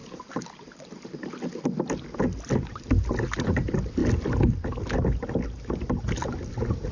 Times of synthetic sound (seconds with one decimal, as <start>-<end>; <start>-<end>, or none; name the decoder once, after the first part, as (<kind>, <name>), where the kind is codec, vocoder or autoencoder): 0.0-1.6 (vocoder, BigVGAN v2)